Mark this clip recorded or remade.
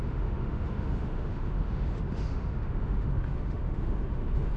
remade